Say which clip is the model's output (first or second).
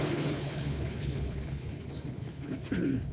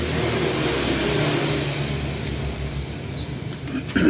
first